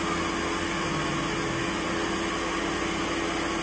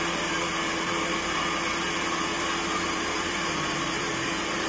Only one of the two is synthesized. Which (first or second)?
second